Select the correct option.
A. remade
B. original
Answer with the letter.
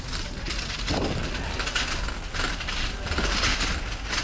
B